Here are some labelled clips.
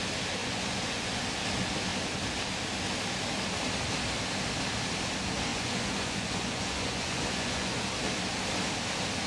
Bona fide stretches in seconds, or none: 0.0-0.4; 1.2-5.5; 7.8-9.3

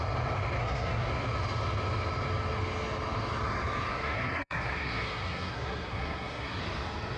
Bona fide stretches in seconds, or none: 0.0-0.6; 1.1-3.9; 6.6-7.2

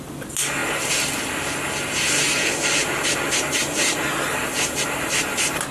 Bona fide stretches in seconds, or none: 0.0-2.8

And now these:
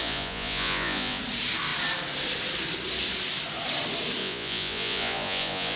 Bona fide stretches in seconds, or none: 1.2-4.2

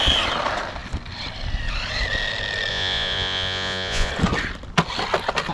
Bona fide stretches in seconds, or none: 0.0-2.7; 4.1-5.5

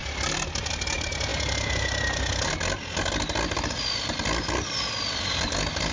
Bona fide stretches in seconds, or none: 0.0-5.9